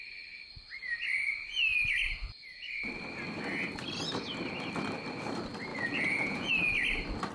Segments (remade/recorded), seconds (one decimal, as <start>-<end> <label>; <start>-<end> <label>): 0.0-5.7 recorded; 5.7-6.5 remade; 6.5-7.3 recorded